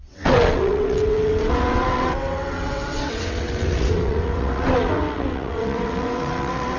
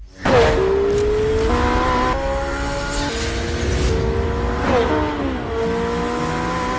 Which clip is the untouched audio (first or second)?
second